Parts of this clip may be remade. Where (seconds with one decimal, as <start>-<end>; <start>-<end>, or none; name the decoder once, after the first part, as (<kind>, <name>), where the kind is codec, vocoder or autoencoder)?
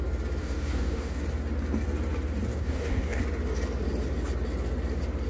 0.4-1.2 (codec, DAC); 2.5-3.2